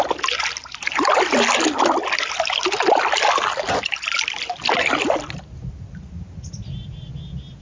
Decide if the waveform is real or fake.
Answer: real